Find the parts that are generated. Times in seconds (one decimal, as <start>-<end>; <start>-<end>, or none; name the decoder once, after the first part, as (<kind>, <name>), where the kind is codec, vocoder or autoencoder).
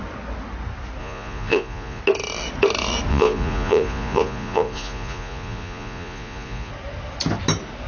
1.0-2.0 (vocoder, Vocos); 3.1-6.7